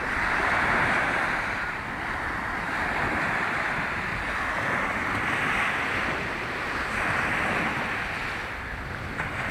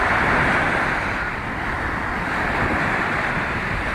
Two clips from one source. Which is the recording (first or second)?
first